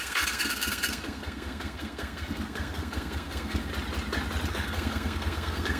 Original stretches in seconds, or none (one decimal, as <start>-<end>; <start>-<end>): 3.7-4.5